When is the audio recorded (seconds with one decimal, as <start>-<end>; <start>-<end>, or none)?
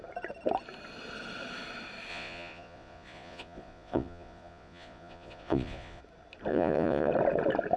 0.0-2.1; 6.0-6.5; 7.1-7.8